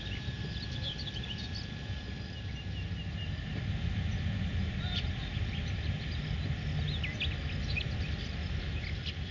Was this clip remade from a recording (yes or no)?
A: no